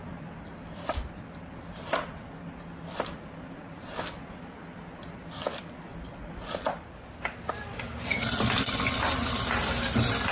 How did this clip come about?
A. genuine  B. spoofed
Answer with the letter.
A